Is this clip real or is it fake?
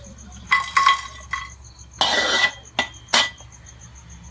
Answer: real